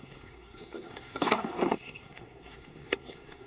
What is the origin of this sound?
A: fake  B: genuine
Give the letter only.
A